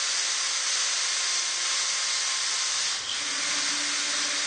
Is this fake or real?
real